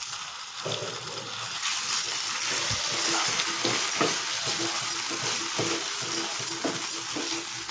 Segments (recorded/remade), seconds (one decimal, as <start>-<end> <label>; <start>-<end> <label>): 0.0-7.7 recorded